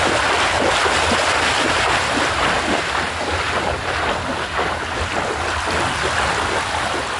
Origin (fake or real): real